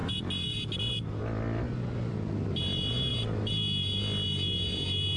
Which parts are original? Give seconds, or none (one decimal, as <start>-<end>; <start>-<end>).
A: 0.0-5.2